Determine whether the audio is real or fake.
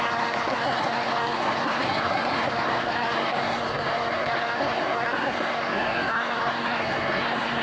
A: fake